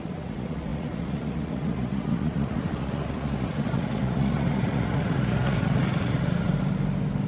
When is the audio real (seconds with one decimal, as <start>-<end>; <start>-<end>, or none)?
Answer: 6.5-7.3